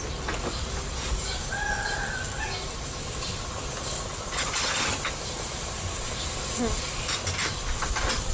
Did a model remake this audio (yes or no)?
no